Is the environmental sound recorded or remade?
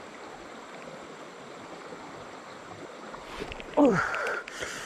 remade